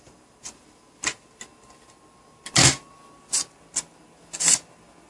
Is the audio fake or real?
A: real